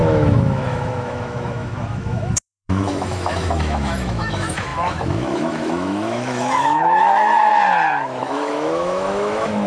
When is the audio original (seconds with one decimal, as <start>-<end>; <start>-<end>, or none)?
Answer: 7.5-8.2